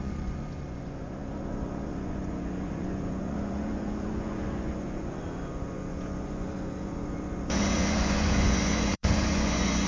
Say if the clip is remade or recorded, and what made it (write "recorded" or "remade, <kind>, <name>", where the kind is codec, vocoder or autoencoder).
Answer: remade, vocoder, Vocos